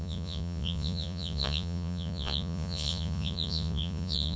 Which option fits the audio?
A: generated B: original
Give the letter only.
A